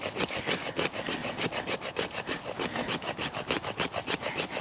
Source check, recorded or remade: recorded